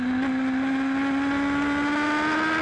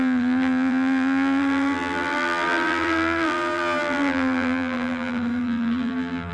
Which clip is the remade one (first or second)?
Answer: second